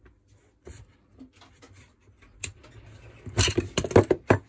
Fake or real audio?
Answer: real